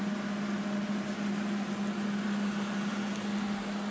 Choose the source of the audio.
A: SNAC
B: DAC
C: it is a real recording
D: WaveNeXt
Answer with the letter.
C